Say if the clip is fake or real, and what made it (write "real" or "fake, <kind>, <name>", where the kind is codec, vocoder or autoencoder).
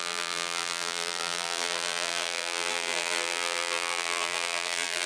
fake, vocoder, BigVGAN v2